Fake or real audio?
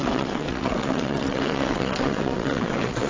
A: fake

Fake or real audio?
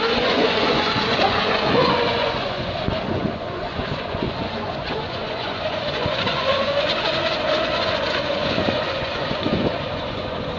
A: fake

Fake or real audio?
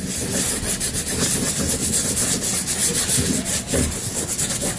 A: real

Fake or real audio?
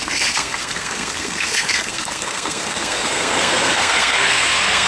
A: fake